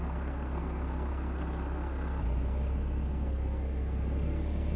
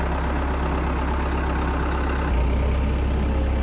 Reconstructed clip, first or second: first